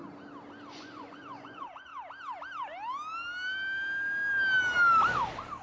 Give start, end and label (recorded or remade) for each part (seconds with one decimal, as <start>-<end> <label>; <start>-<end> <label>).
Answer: 0.0-0.7 recorded; 0.7-1.9 remade; 1.9-5.6 recorded